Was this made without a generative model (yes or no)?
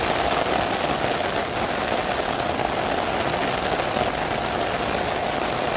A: yes